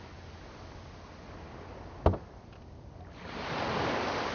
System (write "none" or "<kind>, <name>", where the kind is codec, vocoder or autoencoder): none